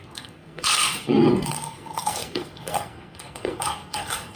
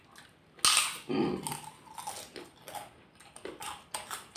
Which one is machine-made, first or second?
first